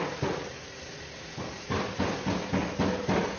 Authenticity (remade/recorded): recorded